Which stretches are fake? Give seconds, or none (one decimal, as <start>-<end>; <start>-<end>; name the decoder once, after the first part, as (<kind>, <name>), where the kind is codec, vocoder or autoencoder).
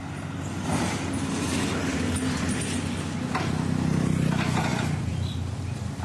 none